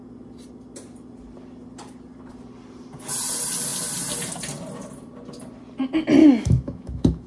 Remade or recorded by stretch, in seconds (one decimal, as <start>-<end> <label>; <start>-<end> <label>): 0.0-6.2 recorded; 6.2-7.3 remade

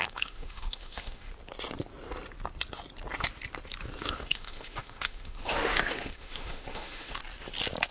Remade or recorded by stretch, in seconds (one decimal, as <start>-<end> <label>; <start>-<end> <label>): 0.0-1.3 remade; 1.3-4.0 recorded; 4.0-7.2 remade; 7.2-7.9 recorded

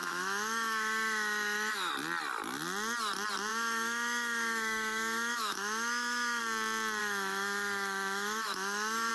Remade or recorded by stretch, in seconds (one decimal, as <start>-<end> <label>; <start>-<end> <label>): 0.0-1.9 remade; 1.9-3.5 recorded; 3.5-6.4 remade; 6.4-7.0 recorded; 7.0-9.1 remade

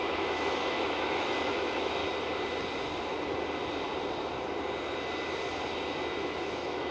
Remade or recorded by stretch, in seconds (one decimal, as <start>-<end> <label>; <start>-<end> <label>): 0.0-2.0 remade; 2.0-6.1 recorded; 6.1-6.9 remade

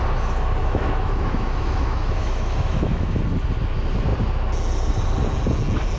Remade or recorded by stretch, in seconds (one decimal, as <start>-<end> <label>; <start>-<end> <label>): 0.0-0.6 recorded; 0.6-3.2 remade; 3.2-6.0 recorded